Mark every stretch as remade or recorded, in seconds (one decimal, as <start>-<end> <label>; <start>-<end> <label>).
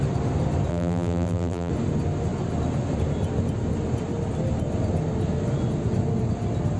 0.0-0.7 recorded; 0.7-1.7 remade; 1.7-6.8 recorded